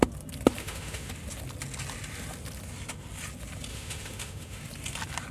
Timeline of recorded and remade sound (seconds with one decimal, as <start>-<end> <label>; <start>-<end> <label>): 0.0-0.6 recorded; 0.6-1.1 remade; 1.1-3.7 recorded; 3.7-4.6 remade; 4.6-5.3 recorded